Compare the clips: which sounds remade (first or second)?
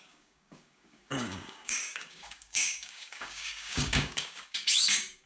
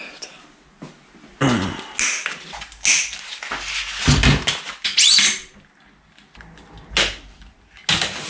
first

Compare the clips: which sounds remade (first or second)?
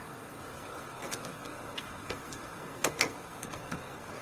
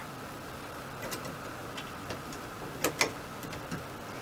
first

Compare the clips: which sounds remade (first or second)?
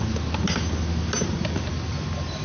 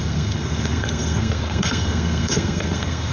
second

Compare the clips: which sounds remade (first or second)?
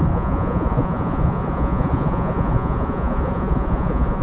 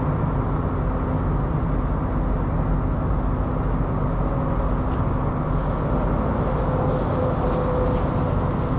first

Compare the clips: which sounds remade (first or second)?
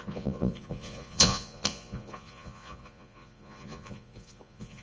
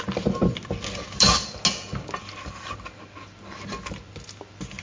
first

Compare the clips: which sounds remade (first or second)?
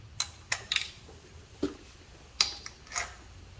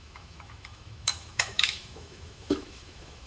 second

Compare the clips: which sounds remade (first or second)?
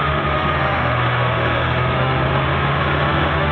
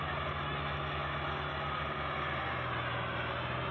first